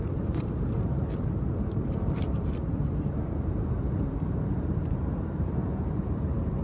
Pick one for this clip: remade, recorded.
remade